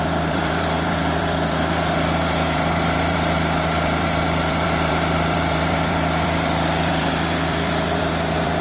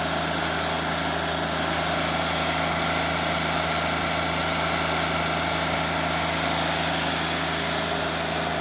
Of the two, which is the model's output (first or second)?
first